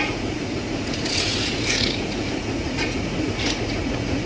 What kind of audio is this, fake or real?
fake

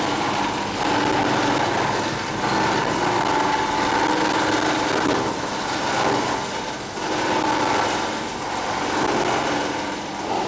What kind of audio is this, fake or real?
real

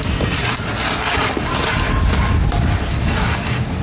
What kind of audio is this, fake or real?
real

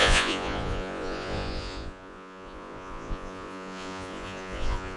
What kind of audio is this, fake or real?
fake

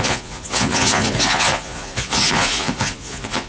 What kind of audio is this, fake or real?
fake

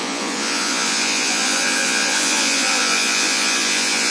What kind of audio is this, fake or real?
fake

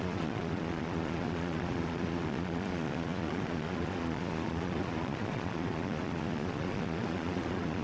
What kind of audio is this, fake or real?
fake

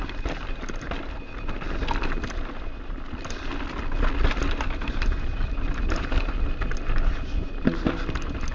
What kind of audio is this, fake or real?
real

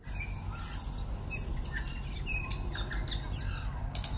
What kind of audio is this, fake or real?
real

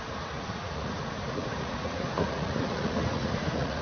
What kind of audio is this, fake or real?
fake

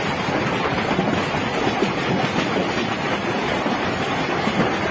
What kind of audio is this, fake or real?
real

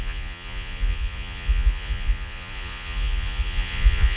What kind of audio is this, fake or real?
fake